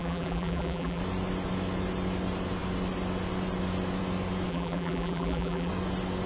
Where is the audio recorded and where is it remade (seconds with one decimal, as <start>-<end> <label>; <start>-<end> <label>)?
0.0-1.0 remade; 1.0-4.5 recorded; 4.5-5.7 remade; 5.7-6.3 recorded